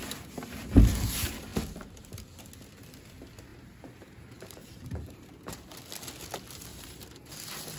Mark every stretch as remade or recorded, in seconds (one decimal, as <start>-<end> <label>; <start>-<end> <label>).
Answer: 0.0-3.5 recorded; 3.5-5.7 remade; 5.7-6.7 recorded; 6.7-7.3 remade; 7.3-7.8 recorded